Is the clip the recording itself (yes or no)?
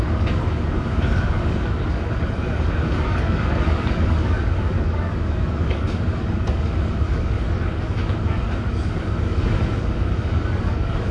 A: no